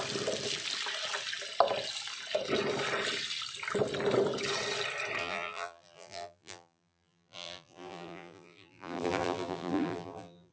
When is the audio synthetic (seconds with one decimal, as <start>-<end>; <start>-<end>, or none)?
5.2-10.5